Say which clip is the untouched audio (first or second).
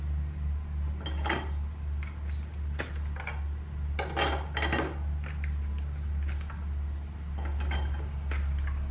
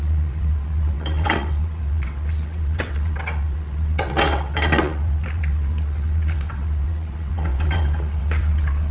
first